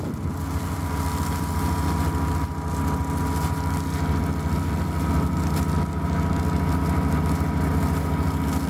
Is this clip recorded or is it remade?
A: recorded